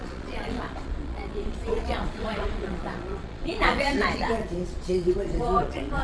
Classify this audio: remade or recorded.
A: remade